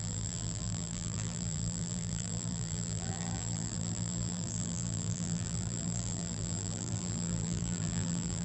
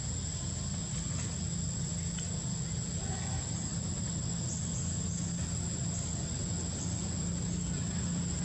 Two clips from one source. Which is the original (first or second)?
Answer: second